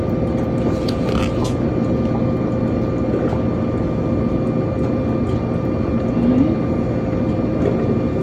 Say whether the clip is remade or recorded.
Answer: recorded